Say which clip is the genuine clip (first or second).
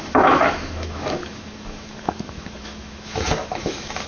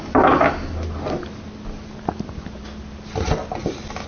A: second